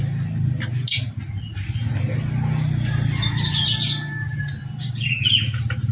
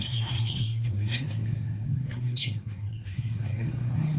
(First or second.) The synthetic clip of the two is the second